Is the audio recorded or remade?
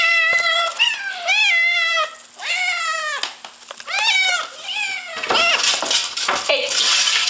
recorded